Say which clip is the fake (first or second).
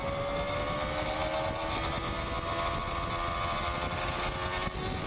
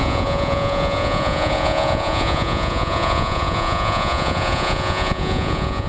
second